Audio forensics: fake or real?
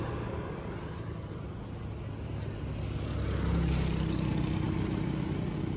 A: real